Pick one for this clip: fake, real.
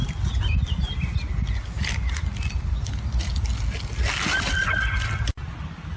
real